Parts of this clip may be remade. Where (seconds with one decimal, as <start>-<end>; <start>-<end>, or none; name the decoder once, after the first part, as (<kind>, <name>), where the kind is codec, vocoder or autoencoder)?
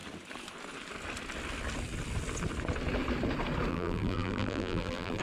3.7-5.2 (vocoder, BigVGAN v2)